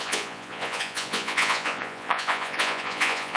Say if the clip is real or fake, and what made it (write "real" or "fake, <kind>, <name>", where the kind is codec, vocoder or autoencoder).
fake, vocoder, Vocos